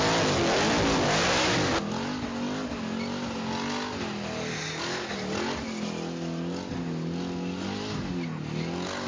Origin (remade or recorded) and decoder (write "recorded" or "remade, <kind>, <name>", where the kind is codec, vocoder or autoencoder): recorded